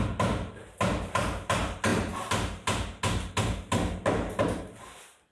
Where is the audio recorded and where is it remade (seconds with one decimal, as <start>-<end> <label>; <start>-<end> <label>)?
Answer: 0.0-5.3 recorded